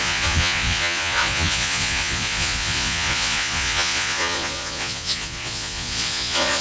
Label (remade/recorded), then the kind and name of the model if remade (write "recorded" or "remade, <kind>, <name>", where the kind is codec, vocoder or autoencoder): remade, vocoder, Vocos